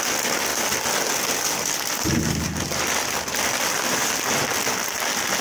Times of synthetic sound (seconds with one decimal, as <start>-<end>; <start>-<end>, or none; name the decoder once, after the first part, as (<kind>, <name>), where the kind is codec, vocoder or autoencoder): none